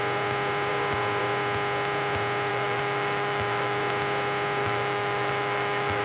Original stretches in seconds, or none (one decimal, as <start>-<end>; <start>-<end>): 0.0-2.5; 3.8-4.6